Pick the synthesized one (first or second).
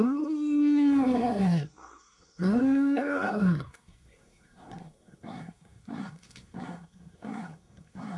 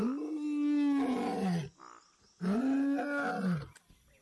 first